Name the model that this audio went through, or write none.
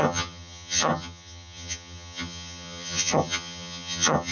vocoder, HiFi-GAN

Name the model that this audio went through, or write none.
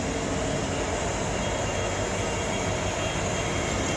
none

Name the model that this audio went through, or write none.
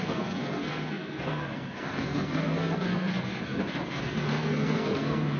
codec, SNAC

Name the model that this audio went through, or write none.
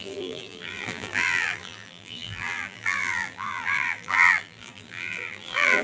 vocoder, BigVGAN v2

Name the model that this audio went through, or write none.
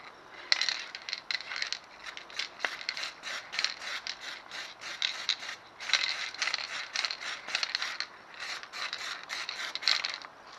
none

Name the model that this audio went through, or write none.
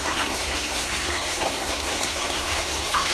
codec, SNAC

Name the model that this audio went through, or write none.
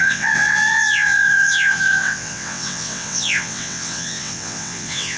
vocoder, WaveNeXt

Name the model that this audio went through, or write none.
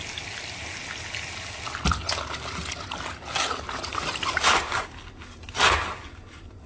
none